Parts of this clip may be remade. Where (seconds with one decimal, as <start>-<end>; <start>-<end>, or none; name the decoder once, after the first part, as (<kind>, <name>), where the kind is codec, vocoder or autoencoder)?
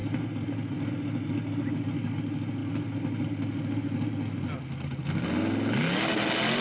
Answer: none